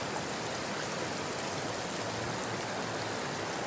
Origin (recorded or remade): remade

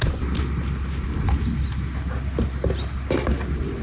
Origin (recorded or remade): recorded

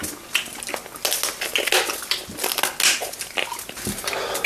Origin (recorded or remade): recorded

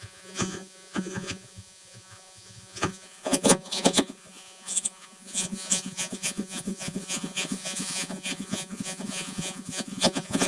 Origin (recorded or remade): remade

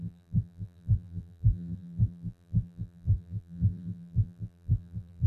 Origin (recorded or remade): remade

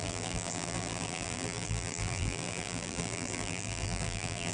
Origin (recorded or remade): remade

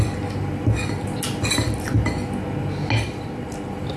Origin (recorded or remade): recorded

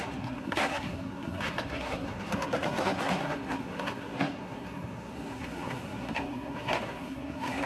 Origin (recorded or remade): remade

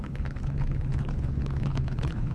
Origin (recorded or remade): remade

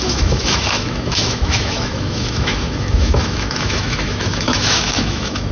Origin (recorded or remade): remade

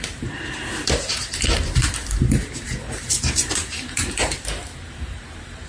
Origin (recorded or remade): remade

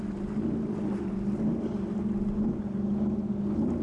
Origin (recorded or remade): recorded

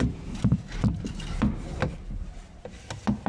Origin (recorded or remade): recorded